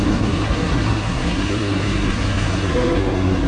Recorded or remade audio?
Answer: remade